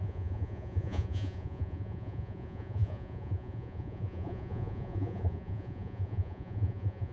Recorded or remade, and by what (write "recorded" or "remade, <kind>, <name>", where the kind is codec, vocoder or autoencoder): remade, vocoder, Vocos